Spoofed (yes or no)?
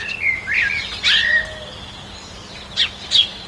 no